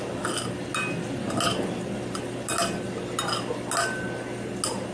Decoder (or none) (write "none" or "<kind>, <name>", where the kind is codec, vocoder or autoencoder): none